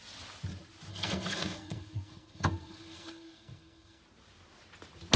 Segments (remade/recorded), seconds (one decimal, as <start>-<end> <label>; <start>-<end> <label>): 0.0-0.9 recorded; 0.9-4.0 remade; 4.0-5.2 recorded